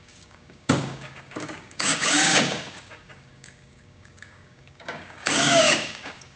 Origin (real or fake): fake